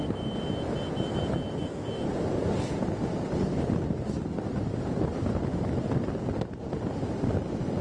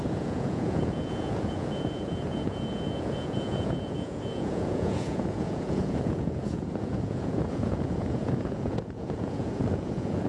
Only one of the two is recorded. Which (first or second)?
first